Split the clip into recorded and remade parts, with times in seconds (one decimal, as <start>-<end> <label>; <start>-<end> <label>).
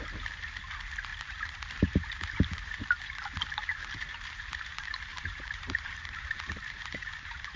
0.0-1.1 recorded; 1.1-3.0 remade; 3.0-3.7 recorded; 3.7-4.3 remade; 4.3-5.1 recorded; 5.1-7.6 remade